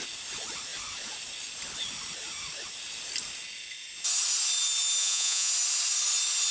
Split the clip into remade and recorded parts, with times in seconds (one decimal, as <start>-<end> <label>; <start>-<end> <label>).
0.0-5.0 recorded; 5.0-5.5 remade; 5.5-6.5 recorded